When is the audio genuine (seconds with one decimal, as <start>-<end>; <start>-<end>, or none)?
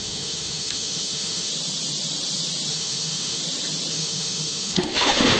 1.5-2.7; 3.4-3.9